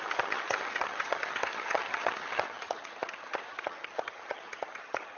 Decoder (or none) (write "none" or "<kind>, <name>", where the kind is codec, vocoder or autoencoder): vocoder, HiFi-GAN